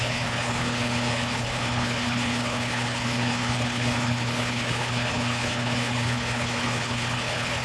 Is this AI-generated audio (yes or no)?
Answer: yes